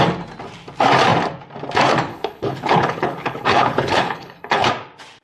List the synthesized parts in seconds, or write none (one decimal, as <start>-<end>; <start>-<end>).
2.1-4.7